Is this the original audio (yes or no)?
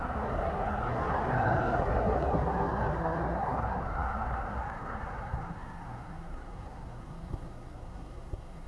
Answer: no